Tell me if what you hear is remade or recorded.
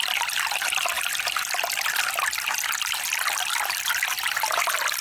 recorded